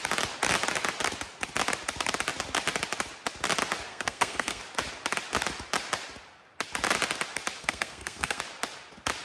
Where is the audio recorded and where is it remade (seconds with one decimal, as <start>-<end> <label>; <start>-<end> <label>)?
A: 0.0-3.9 recorded; 3.9-4.6 remade; 4.6-7.6 recorded; 7.6-8.4 remade; 8.4-9.2 recorded